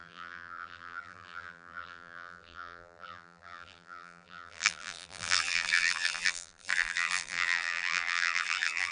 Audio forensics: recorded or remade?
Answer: remade